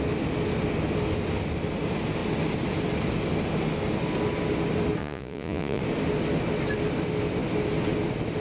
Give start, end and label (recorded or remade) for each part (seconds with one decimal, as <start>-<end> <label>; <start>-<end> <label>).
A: 0.0-5.0 recorded; 5.0-5.8 remade; 5.8-8.4 recorded